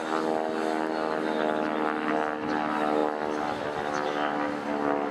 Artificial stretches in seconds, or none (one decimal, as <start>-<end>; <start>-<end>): none